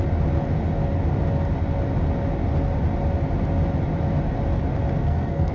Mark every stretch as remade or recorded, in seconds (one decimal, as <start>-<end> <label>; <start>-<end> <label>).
0.0-5.0 recorded; 5.0-5.5 remade